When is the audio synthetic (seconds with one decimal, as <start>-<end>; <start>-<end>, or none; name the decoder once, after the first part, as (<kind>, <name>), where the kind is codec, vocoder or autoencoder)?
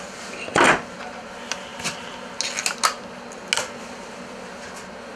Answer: none